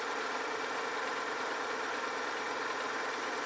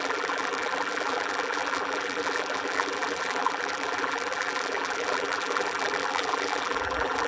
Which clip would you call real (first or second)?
first